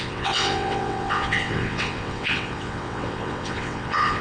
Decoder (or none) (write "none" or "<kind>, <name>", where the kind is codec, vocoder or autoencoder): vocoder, WaveNeXt